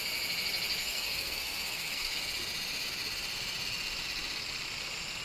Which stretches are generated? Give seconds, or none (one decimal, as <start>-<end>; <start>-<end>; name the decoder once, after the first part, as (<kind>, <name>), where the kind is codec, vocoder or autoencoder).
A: 0.8-2.2 (codec, SNAC)

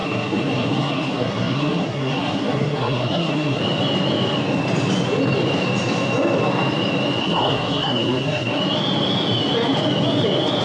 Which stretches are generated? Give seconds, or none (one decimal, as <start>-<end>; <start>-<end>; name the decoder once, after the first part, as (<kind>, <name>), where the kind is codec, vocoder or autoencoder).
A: 0.0-3.6 (codec, SNAC); 7.2-8.6

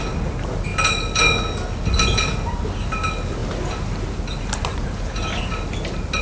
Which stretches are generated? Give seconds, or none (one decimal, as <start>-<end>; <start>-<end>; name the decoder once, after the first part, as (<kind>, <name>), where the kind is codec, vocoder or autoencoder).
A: none

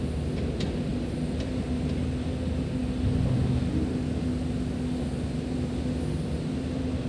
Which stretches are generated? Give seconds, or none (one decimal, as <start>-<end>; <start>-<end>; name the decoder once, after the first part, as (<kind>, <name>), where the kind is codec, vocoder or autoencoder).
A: none

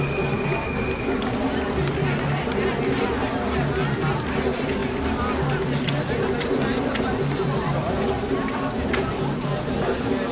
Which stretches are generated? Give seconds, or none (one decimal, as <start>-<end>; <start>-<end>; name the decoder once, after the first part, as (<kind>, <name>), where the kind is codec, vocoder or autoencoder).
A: none

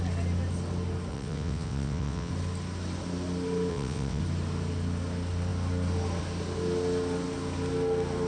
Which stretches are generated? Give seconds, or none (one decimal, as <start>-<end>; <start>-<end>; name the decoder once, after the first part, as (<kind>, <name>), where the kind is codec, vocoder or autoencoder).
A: 1.1-2.3 (vocoder, WaveNeXt); 3.7-4.2

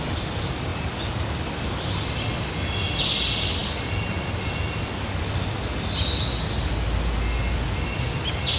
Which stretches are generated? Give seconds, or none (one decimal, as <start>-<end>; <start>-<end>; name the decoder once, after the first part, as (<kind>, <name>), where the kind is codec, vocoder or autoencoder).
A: none

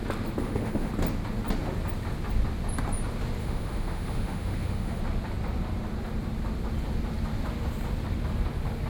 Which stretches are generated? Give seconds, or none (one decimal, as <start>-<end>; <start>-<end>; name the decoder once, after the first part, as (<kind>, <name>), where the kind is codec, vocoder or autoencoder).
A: 0.4-0.9 (autoencoder, DAC-VAE); 3.4-5.0